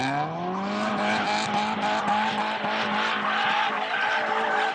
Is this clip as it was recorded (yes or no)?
yes